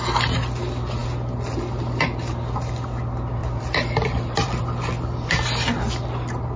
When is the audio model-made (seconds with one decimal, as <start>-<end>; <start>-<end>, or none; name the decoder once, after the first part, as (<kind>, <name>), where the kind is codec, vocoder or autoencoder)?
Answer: 3.4-4.6 (vocoder, BigVGAN v2)